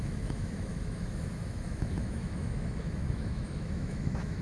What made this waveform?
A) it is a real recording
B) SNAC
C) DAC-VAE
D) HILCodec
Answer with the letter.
C